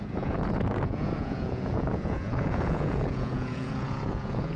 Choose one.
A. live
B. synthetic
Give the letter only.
B